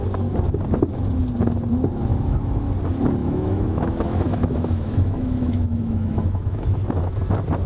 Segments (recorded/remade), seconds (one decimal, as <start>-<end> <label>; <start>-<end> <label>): 0.0-2.1 recorded; 2.1-2.7 remade; 2.7-3.2 recorded; 3.2-7.1 remade; 7.1-7.7 recorded